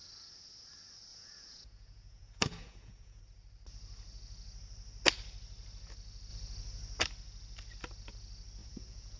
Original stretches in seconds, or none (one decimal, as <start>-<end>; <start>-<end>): 0.0-1.1; 3.2-8.6